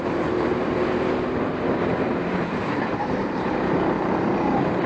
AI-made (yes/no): yes